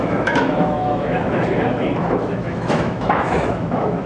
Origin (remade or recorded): remade